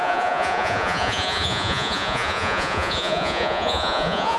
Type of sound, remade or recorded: remade